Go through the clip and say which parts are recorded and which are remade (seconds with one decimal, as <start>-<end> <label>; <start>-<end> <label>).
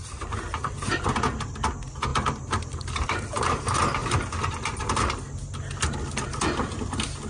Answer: 0.0-1.1 remade; 1.1-2.1 recorded; 2.1-3.6 remade; 3.6-4.0 recorded; 4.0-4.8 remade; 4.8-7.3 recorded